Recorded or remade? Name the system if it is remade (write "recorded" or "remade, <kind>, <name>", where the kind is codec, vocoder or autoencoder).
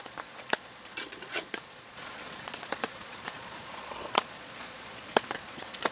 remade, vocoder, Vocos